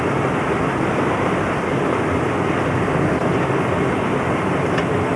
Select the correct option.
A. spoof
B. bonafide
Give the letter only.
B